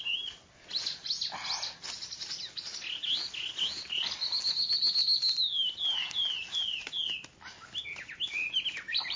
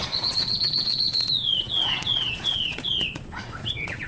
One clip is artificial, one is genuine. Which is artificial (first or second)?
second